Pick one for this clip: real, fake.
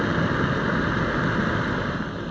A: real